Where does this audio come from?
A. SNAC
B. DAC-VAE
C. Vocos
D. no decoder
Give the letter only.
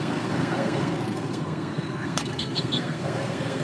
A